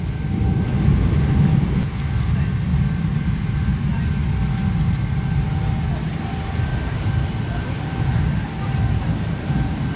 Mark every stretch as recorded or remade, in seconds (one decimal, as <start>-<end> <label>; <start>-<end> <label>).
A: 0.0-2.7 recorded; 2.7-3.2 remade; 3.2-6.7 recorded; 6.7-9.5 remade; 9.5-10.0 recorded